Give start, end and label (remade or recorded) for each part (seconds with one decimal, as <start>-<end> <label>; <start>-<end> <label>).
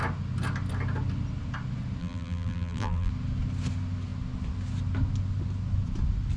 0.0-2.0 recorded; 2.0-3.1 remade; 3.1-6.4 recorded